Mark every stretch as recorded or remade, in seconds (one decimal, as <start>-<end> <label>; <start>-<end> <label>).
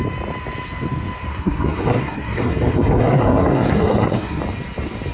0.0-1.3 recorded; 1.3-4.4 remade; 4.4-5.1 recorded